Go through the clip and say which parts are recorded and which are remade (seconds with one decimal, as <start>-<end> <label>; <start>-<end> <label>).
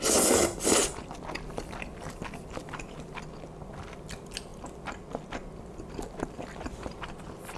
0.0-7.6 recorded